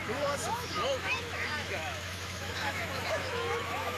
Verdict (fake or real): fake